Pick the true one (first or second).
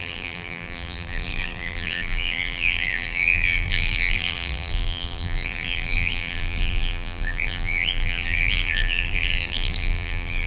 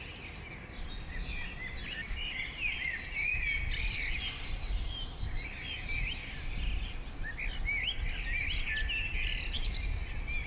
second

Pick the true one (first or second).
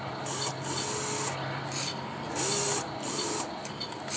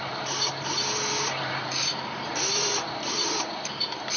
first